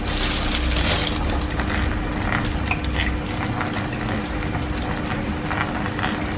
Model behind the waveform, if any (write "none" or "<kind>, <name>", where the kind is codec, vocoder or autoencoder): none